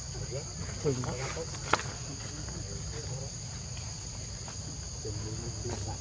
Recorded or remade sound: recorded